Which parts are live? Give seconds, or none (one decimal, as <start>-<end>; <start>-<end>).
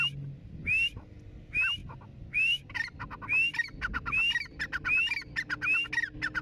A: 0.0-1.8; 3.0-6.4